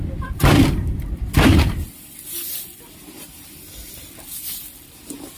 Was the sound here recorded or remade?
remade